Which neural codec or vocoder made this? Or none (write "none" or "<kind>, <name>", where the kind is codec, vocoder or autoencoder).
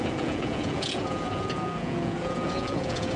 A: vocoder, Vocos